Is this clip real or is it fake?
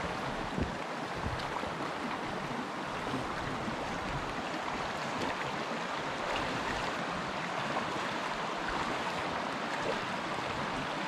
real